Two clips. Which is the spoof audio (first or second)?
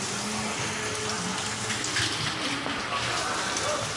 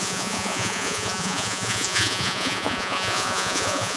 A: second